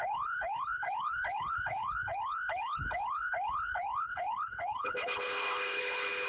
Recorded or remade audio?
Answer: remade